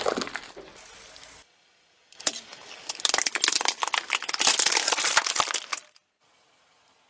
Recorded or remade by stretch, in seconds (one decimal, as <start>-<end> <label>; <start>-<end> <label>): 0.0-7.1 recorded